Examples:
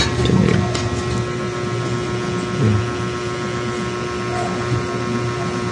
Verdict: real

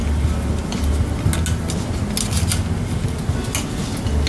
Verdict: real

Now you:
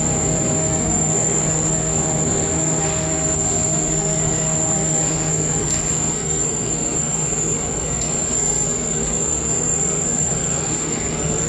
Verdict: fake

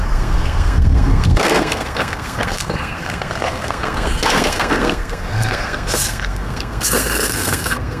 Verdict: fake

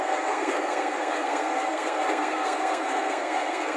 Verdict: fake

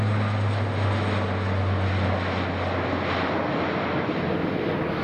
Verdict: real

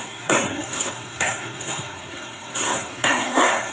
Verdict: fake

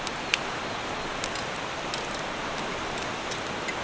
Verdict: real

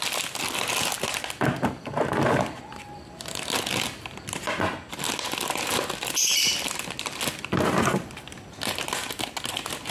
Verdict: real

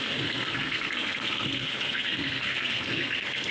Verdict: fake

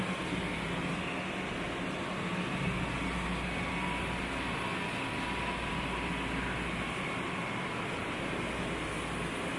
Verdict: real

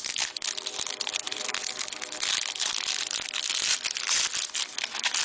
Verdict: real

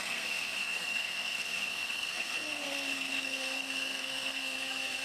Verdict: fake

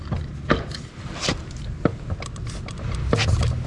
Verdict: real